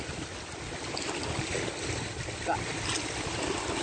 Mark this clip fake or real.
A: real